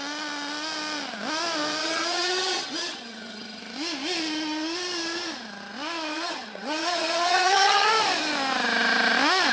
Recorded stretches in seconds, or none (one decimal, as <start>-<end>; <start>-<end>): 0.0-1.8; 3.6-6.1; 7.9-9.5